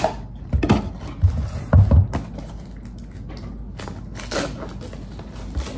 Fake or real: real